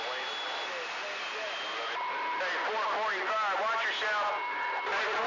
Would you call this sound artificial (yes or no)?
no